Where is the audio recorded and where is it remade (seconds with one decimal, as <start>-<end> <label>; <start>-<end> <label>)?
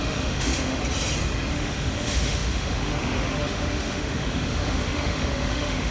0.0-0.8 remade; 0.8-1.5 recorded; 1.5-5.9 remade